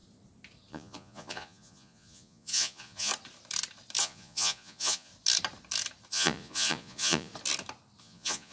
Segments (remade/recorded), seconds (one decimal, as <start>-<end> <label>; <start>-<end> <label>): 0.0-0.7 recorded; 0.7-3.1 remade; 3.1-4.0 recorded; 4.0-5.1 remade; 5.1-6.1 recorded; 6.1-7.3 remade; 7.3-8.0 recorded; 8.0-8.5 remade